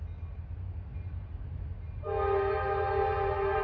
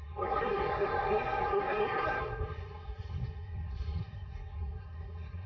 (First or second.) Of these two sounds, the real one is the first